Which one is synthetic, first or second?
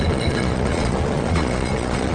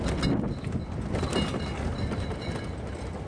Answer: first